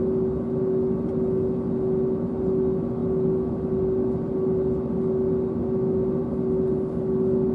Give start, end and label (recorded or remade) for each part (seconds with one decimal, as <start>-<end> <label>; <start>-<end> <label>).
0.0-7.5 recorded